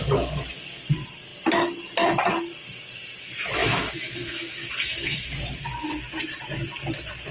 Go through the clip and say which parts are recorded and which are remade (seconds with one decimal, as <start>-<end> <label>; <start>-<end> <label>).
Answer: 0.0-3.6 recorded; 3.6-5.3 remade; 5.3-7.3 recorded